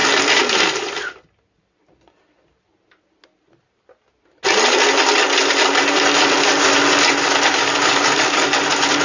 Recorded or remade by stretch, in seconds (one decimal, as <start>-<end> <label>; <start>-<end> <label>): 0.0-7.6 recorded; 7.6-8.6 remade; 8.6-9.0 recorded